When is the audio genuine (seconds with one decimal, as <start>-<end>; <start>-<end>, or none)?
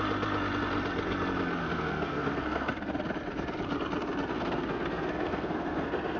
0.0-1.6; 2.9-4.3